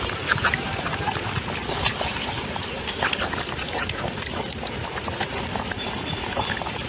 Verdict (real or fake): real